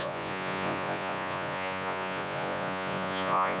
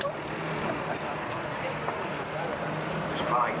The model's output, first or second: first